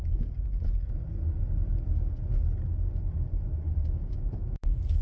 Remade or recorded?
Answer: recorded